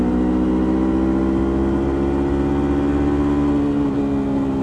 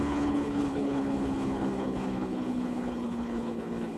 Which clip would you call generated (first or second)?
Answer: second